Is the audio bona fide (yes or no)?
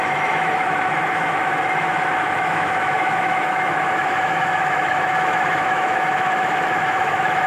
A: no